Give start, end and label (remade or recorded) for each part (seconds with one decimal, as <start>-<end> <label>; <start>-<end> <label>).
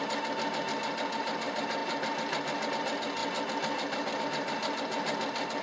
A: 0.0-5.6 recorded